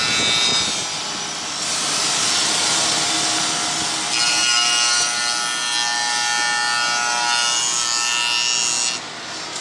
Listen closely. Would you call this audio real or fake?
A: real